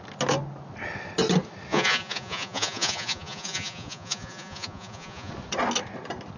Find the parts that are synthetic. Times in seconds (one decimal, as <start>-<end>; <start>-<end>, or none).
1.7-5.3